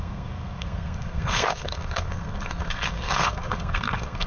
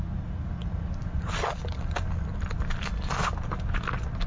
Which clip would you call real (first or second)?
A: second